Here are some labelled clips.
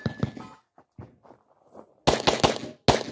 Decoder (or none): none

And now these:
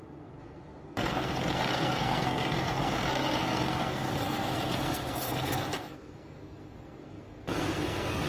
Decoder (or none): codec, SNAC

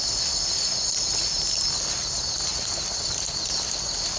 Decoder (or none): none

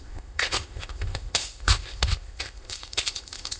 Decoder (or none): codec, ZipCodec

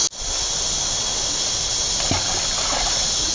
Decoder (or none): none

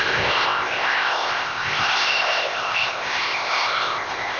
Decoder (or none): codec, ZipCodec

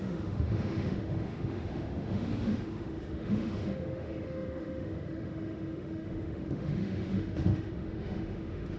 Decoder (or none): autoencoder, DAC-VAE